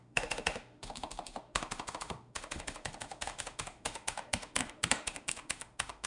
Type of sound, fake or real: fake